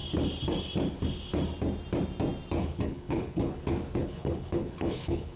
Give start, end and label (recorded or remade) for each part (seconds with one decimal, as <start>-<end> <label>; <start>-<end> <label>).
0.0-2.6 recorded; 2.6-3.6 remade; 3.6-4.0 recorded; 4.0-5.4 remade